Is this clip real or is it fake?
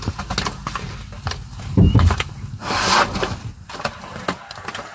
real